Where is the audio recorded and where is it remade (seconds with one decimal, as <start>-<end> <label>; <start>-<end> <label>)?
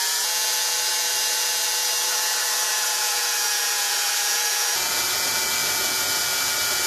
0.0-6.9 remade